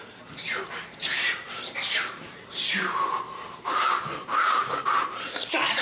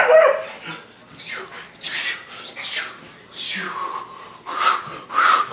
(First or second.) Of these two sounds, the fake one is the first